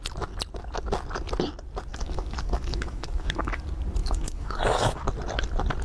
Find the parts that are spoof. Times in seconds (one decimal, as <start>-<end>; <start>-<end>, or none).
1.9-3.6; 4.0-5.0